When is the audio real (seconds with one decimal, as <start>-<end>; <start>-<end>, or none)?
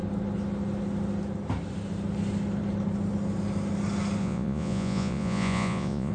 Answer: 0.0-4.2